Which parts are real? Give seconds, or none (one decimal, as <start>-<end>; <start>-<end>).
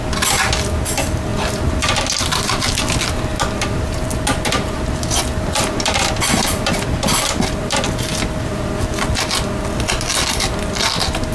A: 0.0-1.3; 2.7-3.3; 4.2-5.3; 8.5-11.3